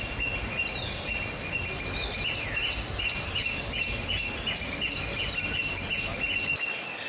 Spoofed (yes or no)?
no